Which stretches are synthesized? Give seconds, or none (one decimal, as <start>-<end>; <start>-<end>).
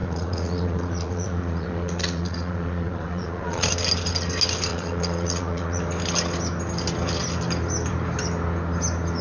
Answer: 0.0-3.7; 4.7-5.8